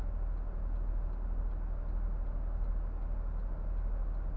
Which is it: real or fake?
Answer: real